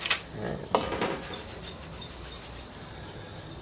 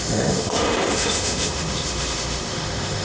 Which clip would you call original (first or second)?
first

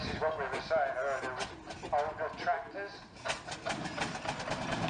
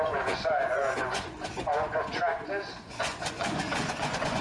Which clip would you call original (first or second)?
first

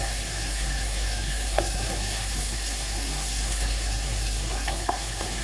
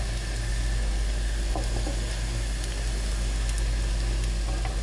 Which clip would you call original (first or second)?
second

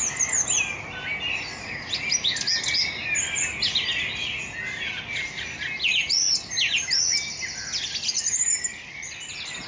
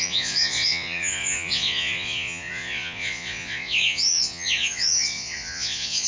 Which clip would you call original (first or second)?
first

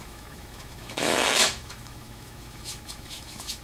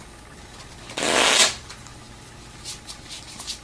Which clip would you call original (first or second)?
second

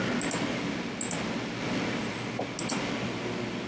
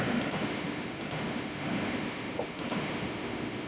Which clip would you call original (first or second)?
first